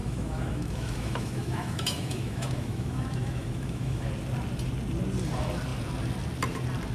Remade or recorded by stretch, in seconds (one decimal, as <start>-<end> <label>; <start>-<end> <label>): 0.0-4.1 remade; 4.1-6.9 recorded